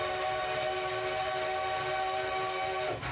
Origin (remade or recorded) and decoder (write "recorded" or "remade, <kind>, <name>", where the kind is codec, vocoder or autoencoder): recorded